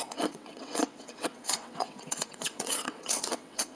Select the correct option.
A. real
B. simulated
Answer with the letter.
B